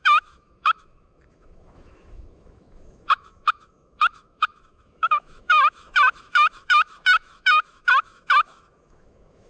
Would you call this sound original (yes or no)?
no